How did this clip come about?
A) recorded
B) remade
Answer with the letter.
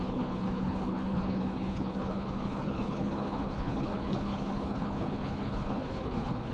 B